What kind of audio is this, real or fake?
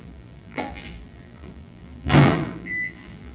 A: fake